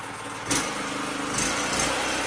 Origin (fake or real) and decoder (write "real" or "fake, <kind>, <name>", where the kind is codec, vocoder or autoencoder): real